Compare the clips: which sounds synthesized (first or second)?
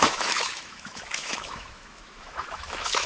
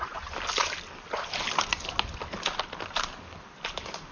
first